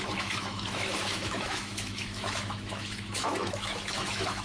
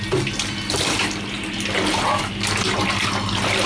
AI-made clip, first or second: first